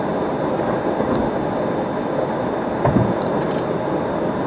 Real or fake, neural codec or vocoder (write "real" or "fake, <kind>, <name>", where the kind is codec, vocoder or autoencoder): real